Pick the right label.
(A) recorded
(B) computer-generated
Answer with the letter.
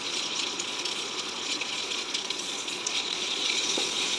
B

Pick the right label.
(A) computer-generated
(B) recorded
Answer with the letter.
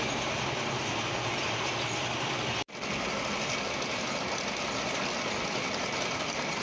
B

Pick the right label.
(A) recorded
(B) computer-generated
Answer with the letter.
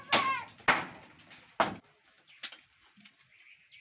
A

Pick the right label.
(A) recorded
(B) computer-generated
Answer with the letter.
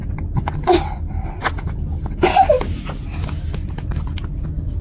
A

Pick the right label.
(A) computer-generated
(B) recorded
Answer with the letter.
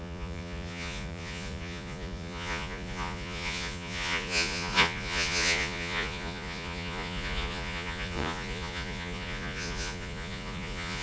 A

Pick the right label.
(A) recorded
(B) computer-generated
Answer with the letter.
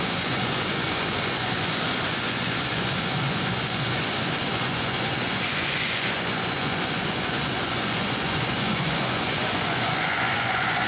B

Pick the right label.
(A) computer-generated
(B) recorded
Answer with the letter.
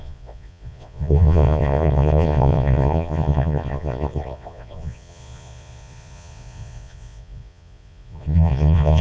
A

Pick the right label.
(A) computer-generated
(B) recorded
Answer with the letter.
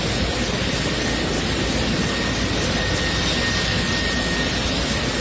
B